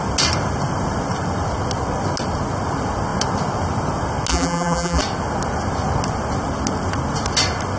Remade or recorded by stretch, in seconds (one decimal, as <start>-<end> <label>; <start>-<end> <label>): 0.0-4.3 recorded; 4.3-5.0 remade; 5.0-7.8 recorded